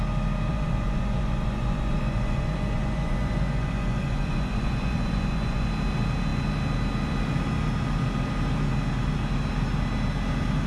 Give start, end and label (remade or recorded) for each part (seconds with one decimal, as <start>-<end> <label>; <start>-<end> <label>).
0.0-0.5 recorded; 0.5-5.7 remade; 5.7-10.7 recorded